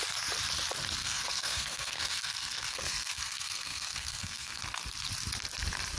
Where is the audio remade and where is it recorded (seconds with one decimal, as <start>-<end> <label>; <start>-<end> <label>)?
0.0-1.0 recorded; 1.0-4.6 remade; 4.6-6.0 recorded